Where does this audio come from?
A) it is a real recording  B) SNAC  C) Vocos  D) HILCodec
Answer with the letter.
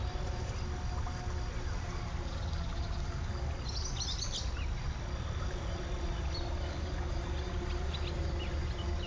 A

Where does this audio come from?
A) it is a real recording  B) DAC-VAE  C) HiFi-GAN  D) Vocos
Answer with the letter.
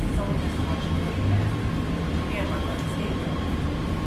A